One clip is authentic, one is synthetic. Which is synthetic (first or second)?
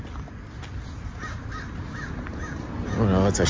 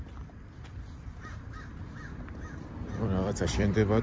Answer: second